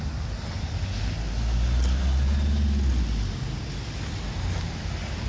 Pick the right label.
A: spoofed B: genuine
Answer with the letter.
B